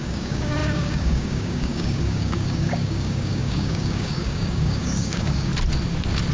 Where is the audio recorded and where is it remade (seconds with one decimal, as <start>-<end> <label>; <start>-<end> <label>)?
0.0-5.5 remade; 5.5-6.3 recorded